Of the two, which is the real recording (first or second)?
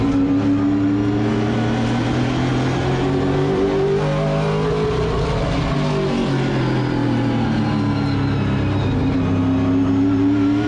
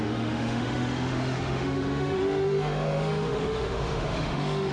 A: first